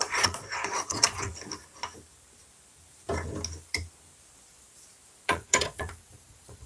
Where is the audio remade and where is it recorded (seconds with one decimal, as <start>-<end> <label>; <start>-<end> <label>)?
0.0-1.3 remade; 1.3-5.3 recorded; 5.3-6.7 remade